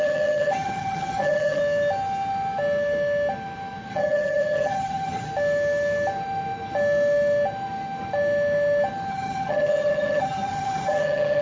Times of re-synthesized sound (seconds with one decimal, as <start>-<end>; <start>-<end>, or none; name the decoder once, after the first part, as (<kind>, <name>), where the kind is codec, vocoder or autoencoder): 0.0-1.6 (vocoder, HiFi-GAN); 3.9-5.3; 9.1-11.4